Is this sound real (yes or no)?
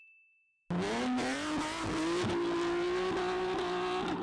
yes